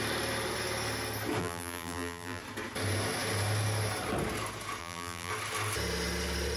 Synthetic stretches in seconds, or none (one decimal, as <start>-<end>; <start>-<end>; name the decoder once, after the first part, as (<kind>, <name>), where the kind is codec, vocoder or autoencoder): 1.4-2.4 (vocoder, BigVGAN v2); 4.8-5.3